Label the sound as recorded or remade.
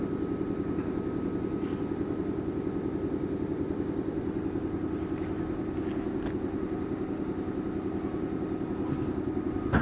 recorded